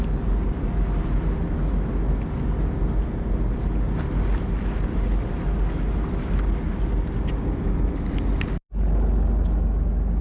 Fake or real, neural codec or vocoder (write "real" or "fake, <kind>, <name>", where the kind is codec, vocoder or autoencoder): real